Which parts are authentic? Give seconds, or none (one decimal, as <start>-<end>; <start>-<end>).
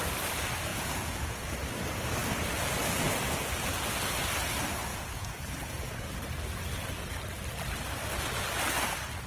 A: 0.0-0.7; 1.5-4.9; 6.2-9.3